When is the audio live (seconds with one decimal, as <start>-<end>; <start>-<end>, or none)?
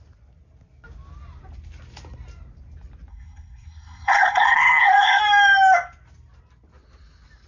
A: 0.0-3.1; 5.2-7.5